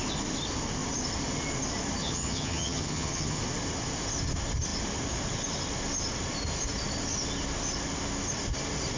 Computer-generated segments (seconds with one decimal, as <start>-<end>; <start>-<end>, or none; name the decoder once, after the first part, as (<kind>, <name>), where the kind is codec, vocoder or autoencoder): 2.0-3.4 (vocoder, HiFi-GAN)

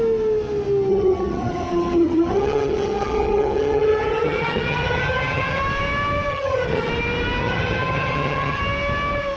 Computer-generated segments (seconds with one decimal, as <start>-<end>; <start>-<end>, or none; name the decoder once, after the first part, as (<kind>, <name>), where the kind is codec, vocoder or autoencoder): 0.9-5.6 (vocoder, HiFi-GAN); 6.3-6.9; 7.4-8.6

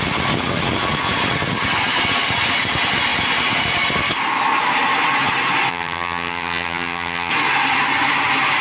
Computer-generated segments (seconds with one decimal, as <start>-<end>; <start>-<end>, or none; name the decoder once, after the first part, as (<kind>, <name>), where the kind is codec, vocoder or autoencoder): 5.7-7.3 (vocoder, HiFi-GAN)

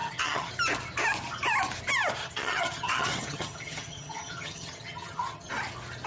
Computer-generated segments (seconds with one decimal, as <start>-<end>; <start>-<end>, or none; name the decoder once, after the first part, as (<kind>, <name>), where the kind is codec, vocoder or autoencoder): 0.0-0.5 (vocoder, HiFi-GAN); 2.2-5.5

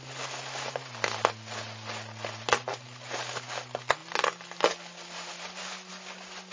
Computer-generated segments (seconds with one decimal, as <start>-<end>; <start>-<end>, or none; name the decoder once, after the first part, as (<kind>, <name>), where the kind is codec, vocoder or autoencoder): none

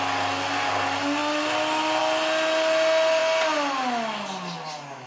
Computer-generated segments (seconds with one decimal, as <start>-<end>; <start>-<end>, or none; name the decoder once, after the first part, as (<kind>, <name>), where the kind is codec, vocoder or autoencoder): none

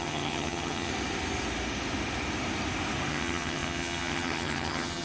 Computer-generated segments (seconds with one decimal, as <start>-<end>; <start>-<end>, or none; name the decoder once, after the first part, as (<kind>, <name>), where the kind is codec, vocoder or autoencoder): 0.0-0.9 (vocoder, HiFi-GAN); 3.1-5.0